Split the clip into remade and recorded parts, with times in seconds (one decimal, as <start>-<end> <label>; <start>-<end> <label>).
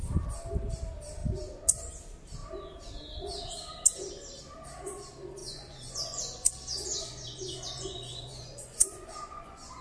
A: 0.0-5.4 recorded; 5.4-6.5 remade; 6.5-6.9 recorded; 6.9-9.8 remade